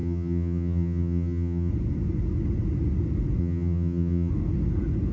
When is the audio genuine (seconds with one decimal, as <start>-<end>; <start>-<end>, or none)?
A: 1.7-3.4; 4.3-5.1